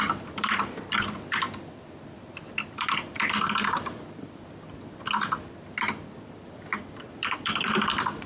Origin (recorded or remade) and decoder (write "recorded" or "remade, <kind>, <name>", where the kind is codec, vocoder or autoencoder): remade, vocoder, BigVGAN v2